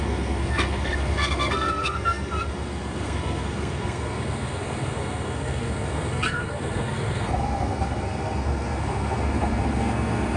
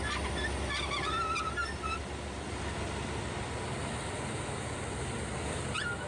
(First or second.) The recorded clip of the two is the second